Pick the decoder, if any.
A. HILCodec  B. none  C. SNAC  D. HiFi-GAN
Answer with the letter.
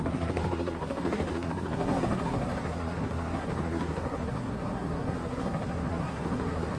C